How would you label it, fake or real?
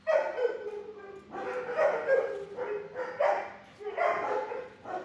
real